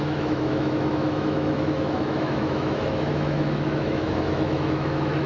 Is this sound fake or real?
fake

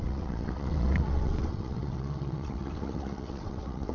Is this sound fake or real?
fake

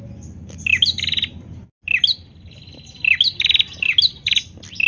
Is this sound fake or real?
real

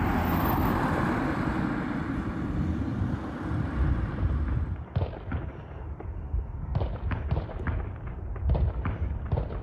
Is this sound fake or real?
real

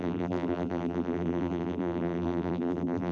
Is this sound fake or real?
fake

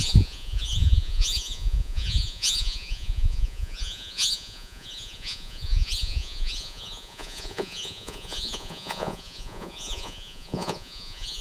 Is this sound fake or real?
fake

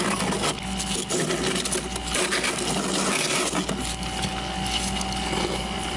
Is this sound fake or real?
real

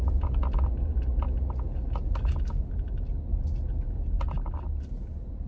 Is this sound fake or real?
real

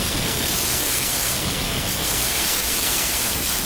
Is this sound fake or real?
fake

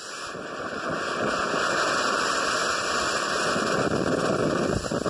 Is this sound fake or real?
real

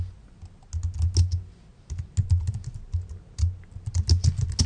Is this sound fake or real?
real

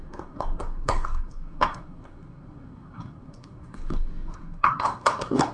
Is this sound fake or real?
fake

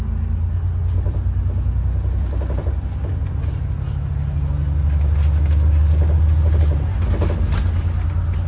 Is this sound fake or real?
real